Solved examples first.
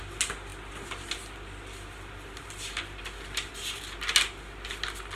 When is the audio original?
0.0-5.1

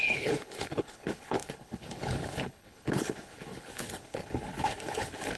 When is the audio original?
none

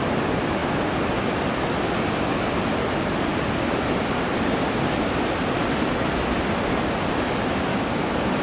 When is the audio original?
0.0-7.7

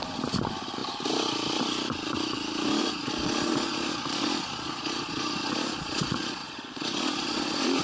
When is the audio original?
0.0-2.8

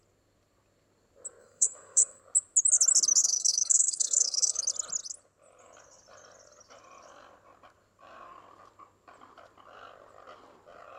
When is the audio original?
0.0-1.4; 2.2-3.2; 4.6-11.0

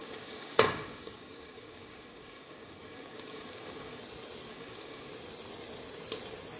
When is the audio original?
4.0-4.5; 5.1-6.6